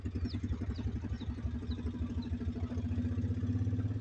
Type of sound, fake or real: real